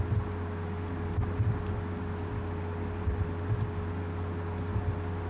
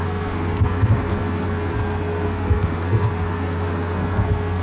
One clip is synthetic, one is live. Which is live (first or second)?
first